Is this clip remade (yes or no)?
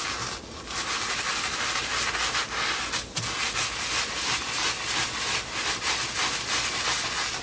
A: no